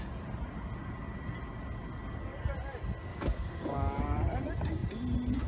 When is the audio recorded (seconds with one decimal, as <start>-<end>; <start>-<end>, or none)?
0.0-3.1; 4.0-5.5